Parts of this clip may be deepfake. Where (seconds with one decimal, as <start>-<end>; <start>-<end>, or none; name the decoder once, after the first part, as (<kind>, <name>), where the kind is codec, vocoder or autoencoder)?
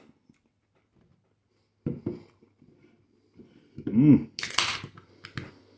none